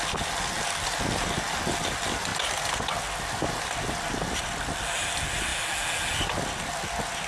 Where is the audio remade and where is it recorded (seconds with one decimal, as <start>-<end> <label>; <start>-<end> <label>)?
0.0-7.3 recorded